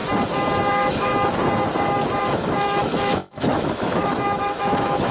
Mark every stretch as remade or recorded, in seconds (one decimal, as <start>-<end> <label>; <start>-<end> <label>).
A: 0.0-0.7 recorded; 0.7-1.1 remade; 1.1-2.2 recorded; 2.2-5.1 remade